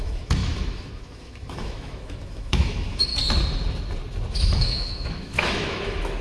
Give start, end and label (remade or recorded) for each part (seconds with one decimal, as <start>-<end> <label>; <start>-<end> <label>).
0.0-3.1 remade; 3.1-4.3 recorded; 4.3-6.2 remade